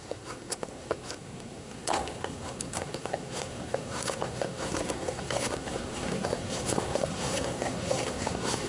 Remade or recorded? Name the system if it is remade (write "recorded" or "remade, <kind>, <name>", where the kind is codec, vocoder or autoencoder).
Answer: remade, codec, SNAC